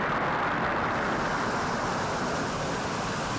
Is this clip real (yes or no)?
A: yes